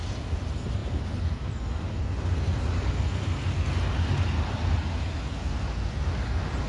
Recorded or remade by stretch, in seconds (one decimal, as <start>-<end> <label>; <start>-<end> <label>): 0.0-6.7 recorded

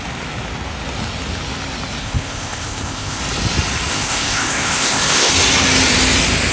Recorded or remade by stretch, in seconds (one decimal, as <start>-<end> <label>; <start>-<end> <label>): 0.0-2.0 recorded; 2.0-3.2 remade; 3.2-3.9 recorded; 3.9-5.3 remade; 5.3-6.5 recorded